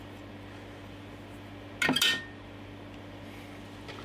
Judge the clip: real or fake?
real